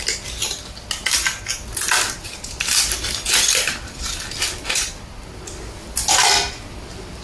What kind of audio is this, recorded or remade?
recorded